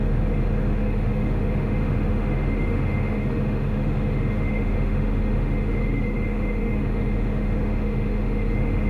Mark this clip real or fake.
fake